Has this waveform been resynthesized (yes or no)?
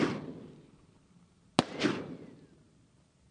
no